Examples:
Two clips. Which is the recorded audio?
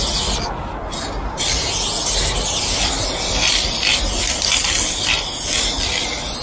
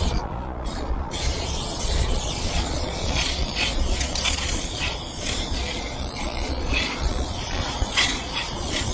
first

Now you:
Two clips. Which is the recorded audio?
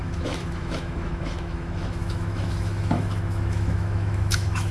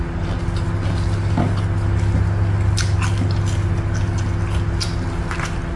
second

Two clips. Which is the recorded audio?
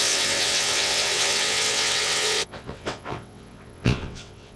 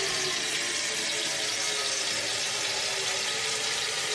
second